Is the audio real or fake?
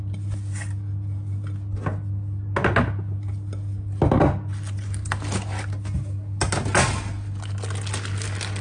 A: real